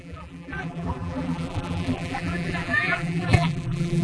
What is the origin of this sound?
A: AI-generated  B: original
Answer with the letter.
A